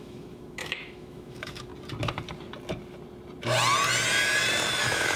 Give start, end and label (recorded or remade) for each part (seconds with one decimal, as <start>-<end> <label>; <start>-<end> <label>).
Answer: 0.0-1.7 remade; 1.7-4.8 recorded; 4.8-5.2 remade